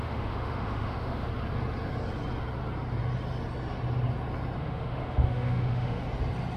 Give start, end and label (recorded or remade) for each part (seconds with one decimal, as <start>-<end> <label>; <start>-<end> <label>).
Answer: 0.0-1.3 remade; 1.3-4.6 recorded; 4.6-6.0 remade; 6.0-6.6 recorded